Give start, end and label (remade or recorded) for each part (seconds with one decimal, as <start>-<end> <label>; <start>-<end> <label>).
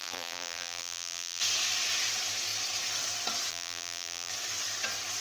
0.0-1.4 remade; 1.4-3.5 recorded; 3.5-4.3 remade; 4.3-5.2 recorded